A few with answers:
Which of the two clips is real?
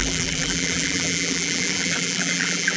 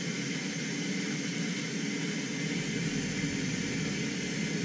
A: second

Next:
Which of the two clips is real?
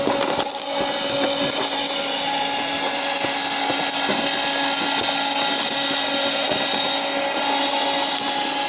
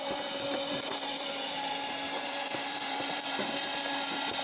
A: first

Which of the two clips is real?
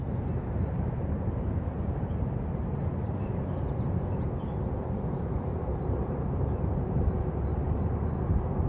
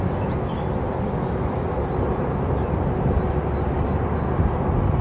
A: second